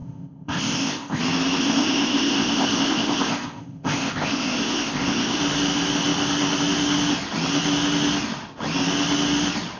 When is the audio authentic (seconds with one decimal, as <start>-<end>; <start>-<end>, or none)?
1.2-1.6; 5.4-9.8